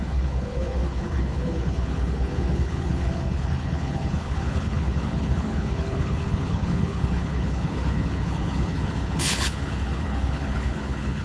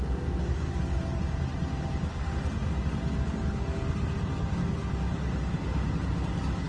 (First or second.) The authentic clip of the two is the second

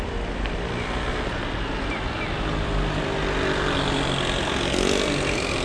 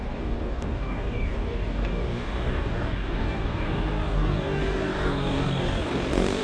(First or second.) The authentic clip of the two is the first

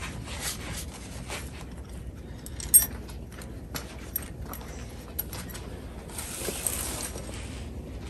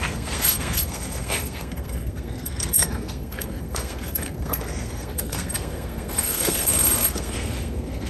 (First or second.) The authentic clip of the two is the first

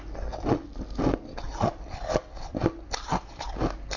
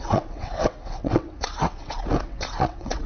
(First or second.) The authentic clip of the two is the first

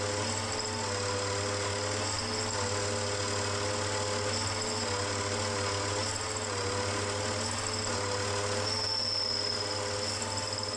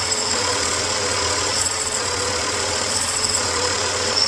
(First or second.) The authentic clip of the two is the first